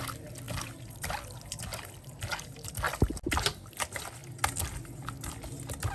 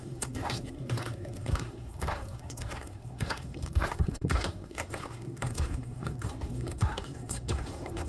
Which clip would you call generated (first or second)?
second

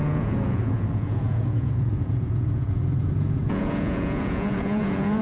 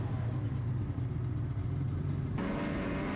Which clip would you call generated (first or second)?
first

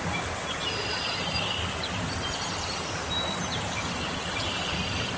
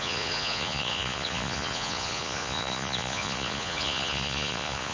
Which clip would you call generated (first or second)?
second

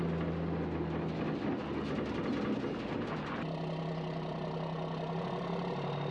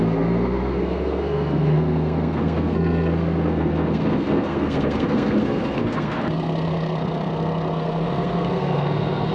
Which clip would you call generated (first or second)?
second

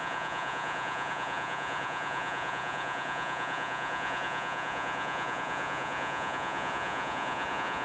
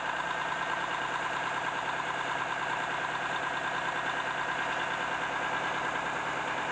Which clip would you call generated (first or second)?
first